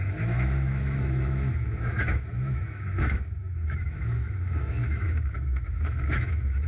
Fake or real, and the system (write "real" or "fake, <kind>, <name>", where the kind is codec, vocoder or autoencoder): fake, autoencoder, DAC-VAE